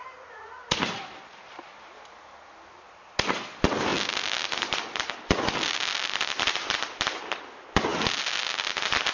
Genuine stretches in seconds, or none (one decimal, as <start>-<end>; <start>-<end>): 0.0-9.1